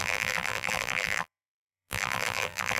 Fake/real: fake